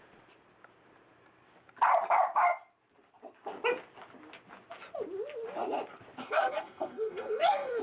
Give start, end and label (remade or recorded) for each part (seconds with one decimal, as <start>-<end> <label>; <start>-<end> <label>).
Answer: 0.0-6.2 recorded; 6.2-7.8 remade